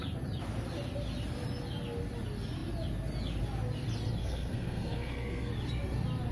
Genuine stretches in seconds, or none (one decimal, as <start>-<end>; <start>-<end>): 0.0-4.2; 5.5-6.3